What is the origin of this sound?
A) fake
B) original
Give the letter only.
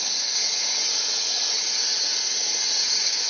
A